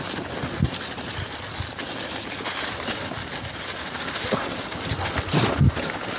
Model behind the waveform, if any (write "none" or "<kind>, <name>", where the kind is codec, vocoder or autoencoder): none